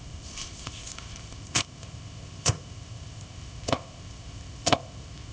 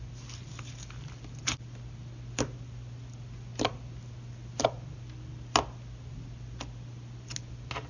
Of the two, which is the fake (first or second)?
first